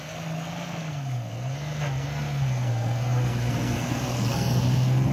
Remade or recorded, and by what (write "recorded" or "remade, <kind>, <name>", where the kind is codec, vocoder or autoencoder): remade, codec, SNAC